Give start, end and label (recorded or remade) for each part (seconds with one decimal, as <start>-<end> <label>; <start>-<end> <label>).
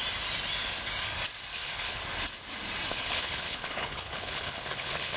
0.0-1.5 recorded; 1.5-2.0 remade; 2.0-2.9 recorded; 2.9-5.2 remade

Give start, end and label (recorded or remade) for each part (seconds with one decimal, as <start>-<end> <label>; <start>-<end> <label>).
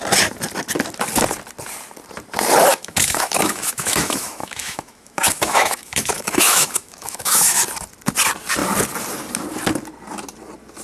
0.0-2.7 recorded; 2.7-7.6 remade; 7.6-10.8 recorded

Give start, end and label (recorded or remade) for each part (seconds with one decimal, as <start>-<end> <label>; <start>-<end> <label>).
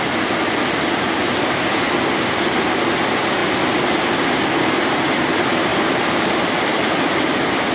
0.0-7.7 recorded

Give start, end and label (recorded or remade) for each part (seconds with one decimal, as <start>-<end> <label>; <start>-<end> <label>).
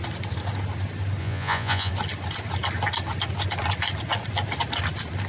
0.0-1.2 recorded; 1.2-1.9 remade; 1.9-5.3 recorded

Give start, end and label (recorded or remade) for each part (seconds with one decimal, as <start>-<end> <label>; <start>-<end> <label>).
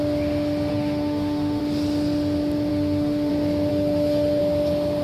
0.0-0.7 recorded; 0.7-1.6 remade; 1.6-2.7 recorded; 2.7-3.3 remade; 3.3-3.7 recorded; 3.7-4.4 remade; 4.4-5.0 recorded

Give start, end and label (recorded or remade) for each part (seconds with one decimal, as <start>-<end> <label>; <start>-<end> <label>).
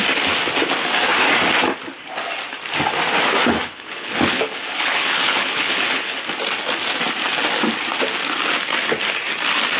0.0-3.4 recorded; 3.4-6.2 remade; 6.2-9.8 recorded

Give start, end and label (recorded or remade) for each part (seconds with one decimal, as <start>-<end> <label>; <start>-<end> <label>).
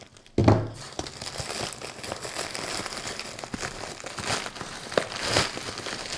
0.0-6.2 recorded